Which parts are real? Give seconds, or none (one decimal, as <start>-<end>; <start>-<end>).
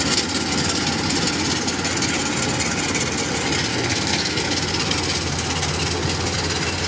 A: 0.0-3.7; 4.4-6.9